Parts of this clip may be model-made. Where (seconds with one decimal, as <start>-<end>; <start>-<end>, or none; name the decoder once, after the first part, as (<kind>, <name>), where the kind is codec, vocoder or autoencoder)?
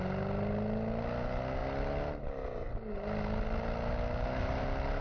none